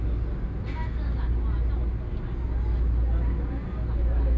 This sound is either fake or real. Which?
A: real